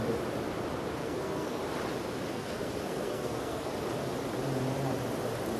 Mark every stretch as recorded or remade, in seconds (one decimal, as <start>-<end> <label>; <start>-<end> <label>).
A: 0.0-1.0 recorded; 1.0-1.6 remade; 1.6-2.3 recorded; 2.3-3.7 remade; 3.7-5.6 recorded